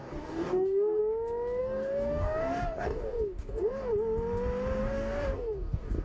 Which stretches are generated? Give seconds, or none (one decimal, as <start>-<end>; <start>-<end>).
0.0-1.0; 1.6-3.9; 4.8-6.0